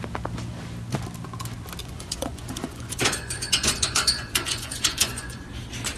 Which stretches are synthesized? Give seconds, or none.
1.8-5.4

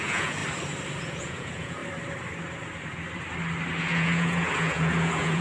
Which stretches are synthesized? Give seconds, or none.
0.0-0.4; 1.0-1.8; 3.8-5.4

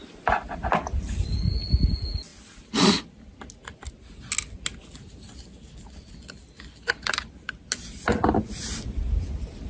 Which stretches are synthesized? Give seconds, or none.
none

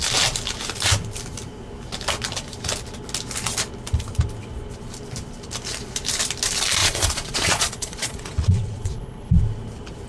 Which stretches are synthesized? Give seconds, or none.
6.8-9.3